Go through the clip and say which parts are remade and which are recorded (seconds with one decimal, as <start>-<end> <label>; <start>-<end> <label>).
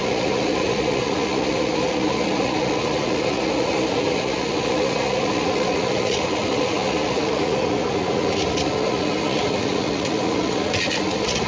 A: 0.0-11.5 remade